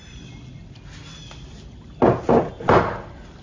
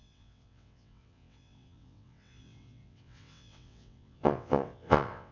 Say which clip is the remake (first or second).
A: second